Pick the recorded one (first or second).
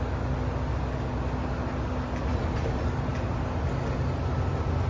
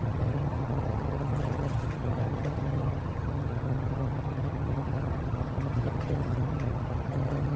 first